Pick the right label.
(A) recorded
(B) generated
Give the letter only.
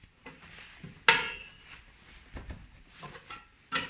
A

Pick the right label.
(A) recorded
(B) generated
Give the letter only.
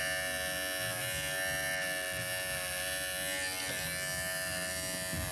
A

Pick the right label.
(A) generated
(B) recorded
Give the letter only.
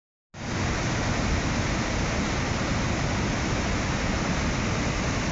B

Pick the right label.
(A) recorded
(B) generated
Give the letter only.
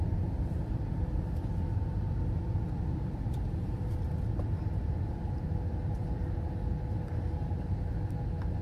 A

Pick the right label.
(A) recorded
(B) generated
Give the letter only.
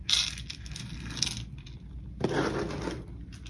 A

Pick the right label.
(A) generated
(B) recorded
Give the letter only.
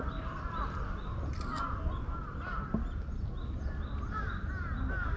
B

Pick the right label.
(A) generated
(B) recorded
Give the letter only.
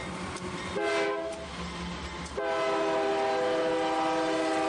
B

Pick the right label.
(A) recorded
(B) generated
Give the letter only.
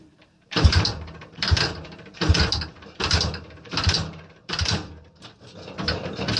B